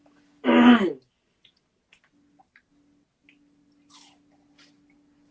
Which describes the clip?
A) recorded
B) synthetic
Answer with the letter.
A